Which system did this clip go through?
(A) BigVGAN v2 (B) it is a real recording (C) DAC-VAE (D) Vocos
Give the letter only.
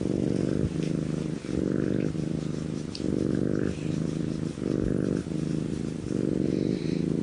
B